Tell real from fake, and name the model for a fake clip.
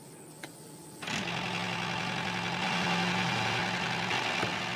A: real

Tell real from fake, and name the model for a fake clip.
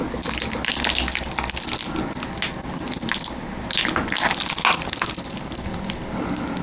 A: real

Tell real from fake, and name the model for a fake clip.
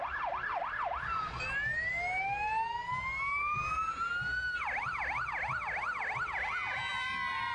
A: real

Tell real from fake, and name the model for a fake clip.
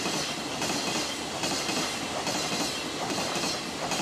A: real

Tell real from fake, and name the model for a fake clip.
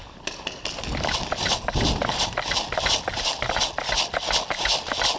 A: real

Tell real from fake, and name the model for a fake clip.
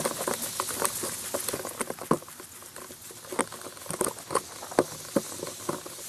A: real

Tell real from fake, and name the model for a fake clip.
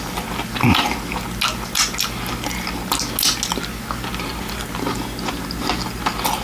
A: real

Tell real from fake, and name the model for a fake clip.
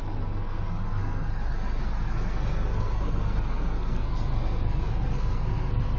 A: fake, codec, SNAC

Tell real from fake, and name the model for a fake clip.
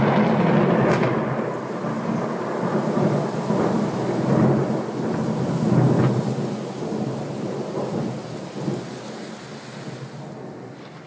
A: real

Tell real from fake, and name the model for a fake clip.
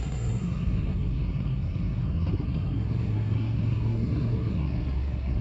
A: fake, codec, SNAC